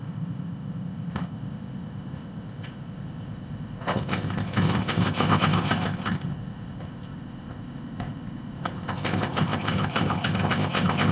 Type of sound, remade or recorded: remade